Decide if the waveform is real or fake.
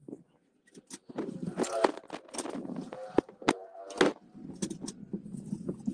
real